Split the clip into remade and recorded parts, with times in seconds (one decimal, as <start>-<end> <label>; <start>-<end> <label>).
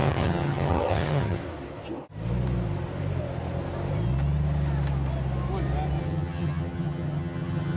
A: 0.0-1.4 remade; 1.4-6.0 recorded; 6.0-7.8 remade